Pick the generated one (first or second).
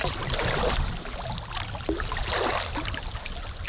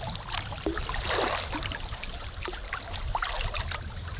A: second